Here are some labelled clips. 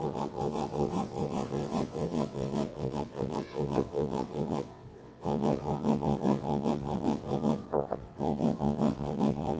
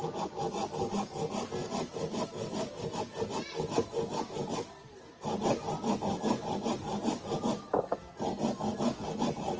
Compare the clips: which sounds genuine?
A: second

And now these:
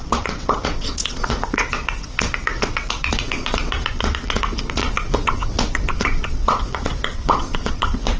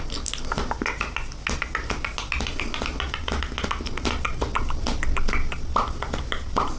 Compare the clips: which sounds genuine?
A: second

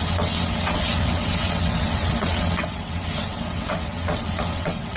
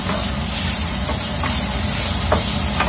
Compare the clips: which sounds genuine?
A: second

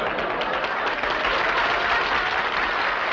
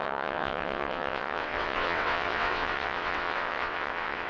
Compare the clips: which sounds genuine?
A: first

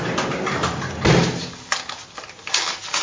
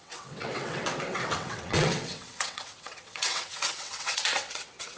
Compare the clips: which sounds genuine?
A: first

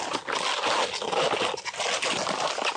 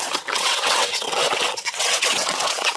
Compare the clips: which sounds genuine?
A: first